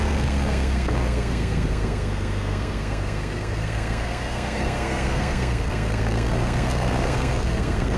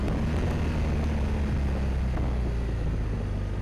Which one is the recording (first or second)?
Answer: second